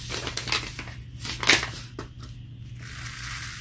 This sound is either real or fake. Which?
real